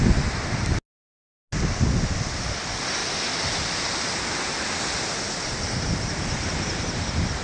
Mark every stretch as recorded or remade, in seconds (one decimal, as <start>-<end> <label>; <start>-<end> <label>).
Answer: 0.0-3.0 recorded; 3.0-3.8 remade; 3.8-7.4 recorded